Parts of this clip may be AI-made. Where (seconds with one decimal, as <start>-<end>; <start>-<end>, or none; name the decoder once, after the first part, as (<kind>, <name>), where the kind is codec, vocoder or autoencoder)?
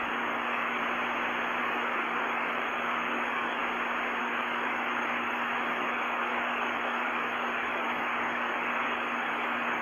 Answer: 0.0-0.8 (codec, DAC); 1.6-3.6; 4.2-9.8